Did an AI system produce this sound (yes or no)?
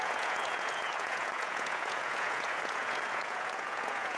yes